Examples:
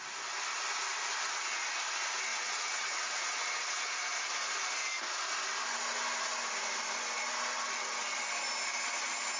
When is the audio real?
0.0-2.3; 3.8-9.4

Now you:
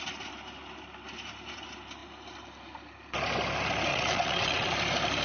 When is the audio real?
0.0-3.9; 4.7-5.2

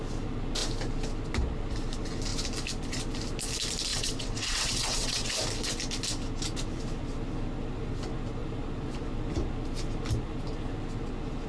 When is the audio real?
0.0-3.9; 5.3-11.5

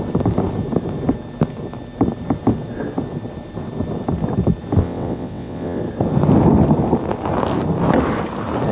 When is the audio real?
0.0-4.8; 5.8-8.7